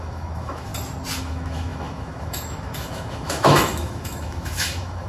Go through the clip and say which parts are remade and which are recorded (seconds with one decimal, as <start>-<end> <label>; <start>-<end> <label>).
0.0-0.7 remade; 0.7-1.2 recorded; 1.2-5.1 remade